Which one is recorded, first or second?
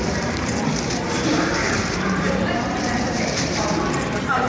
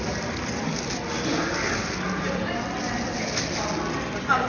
second